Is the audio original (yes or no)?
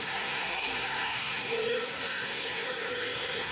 no